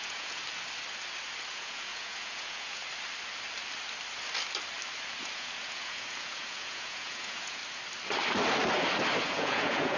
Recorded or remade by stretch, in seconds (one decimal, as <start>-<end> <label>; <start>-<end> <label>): 0.0-0.4 remade; 0.4-1.5 recorded; 1.5-2.8 remade; 2.8-5.2 recorded; 5.2-7.6 remade; 7.6-9.2 recorded; 9.2-10.0 remade